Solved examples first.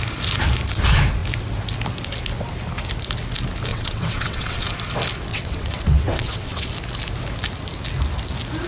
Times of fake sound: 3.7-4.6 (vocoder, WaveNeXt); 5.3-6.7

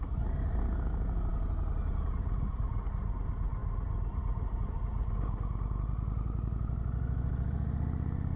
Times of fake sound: none

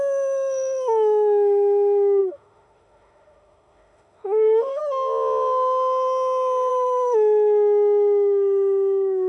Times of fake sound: 0.0-4.8 (autoencoder, DAC-VAE); 6.7-9.3

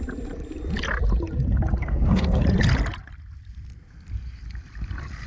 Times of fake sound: 1.8-2.4 (codec, SNAC)

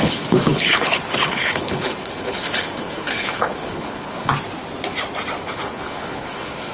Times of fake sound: 0.0-4.3 (codec, HILCodec); 5.4-6.7

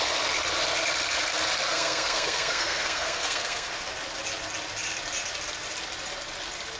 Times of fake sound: 1.7-3.7 (codec, SNAC)

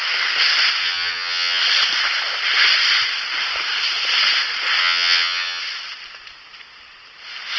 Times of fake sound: 0.8-1.6 (vocoder, HiFi-GAN); 4.8-5.6